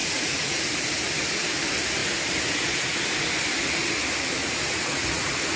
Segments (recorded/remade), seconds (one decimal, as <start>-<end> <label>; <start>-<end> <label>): 0.0-0.7 remade; 0.7-4.4 recorded; 4.4-5.6 remade

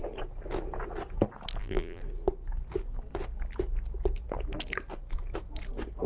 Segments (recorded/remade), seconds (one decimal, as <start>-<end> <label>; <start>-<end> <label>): 0.0-1.6 recorded; 1.6-2.0 remade; 2.0-6.1 recorded

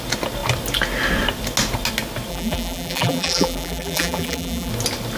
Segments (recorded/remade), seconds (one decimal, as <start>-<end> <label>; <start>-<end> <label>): 0.0-2.3 recorded; 2.3-4.7 remade; 4.7-5.2 recorded

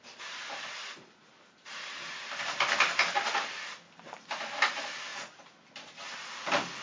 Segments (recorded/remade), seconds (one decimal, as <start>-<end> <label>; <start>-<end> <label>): 0.0-6.8 recorded